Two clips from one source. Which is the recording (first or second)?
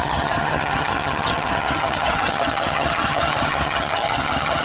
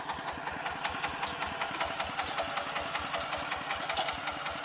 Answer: second